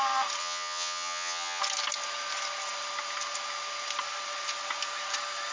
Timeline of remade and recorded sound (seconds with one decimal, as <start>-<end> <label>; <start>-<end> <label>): 0.0-0.4 recorded; 0.4-1.6 remade; 1.6-5.5 recorded